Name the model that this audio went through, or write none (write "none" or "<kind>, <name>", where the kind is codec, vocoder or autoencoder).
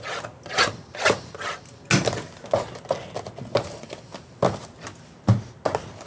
none